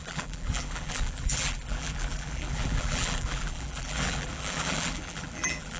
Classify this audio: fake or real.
fake